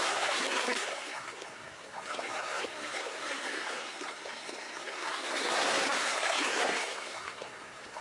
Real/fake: fake